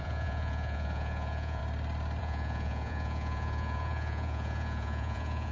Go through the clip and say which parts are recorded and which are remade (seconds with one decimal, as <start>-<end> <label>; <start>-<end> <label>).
0.0-1.6 remade; 1.6-2.2 recorded; 2.2-5.5 remade

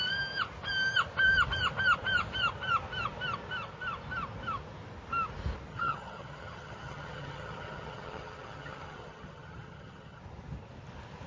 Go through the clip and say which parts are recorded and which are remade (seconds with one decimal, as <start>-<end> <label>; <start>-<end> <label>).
0.0-5.7 recorded; 5.7-10.2 remade; 10.2-11.3 recorded